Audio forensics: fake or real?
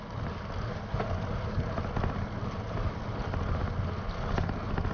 real